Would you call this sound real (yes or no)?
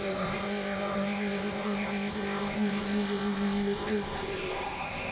no